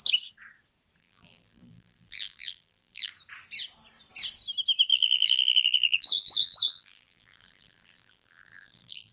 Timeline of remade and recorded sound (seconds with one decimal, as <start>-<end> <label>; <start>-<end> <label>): 0.0-1.0 recorded; 1.0-3.1 remade; 3.1-4.9 recorded; 4.9-9.1 remade